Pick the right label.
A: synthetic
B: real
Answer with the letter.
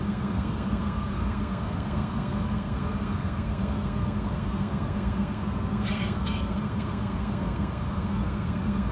A